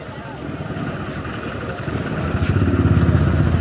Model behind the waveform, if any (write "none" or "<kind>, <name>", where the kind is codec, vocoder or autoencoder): none